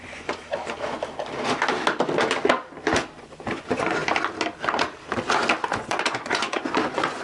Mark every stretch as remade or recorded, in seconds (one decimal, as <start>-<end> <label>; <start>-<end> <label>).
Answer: 0.0-0.4 remade; 0.4-3.2 recorded; 3.2-4.0 remade; 4.0-5.7 recorded; 5.7-7.2 remade